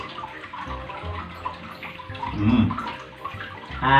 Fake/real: real